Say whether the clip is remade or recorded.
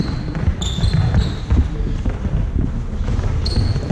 recorded